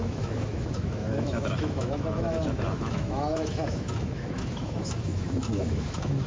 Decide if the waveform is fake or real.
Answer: fake